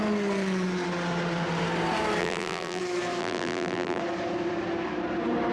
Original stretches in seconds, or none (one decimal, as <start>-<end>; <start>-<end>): 0.0-2.2; 2.8-3.2; 4.0-5.5